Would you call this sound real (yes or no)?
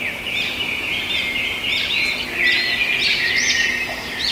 yes